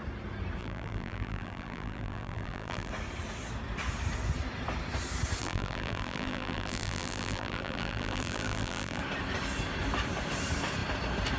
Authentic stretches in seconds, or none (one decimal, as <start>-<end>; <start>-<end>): 0.0-0.6; 2.9-5.4; 9.0-11.4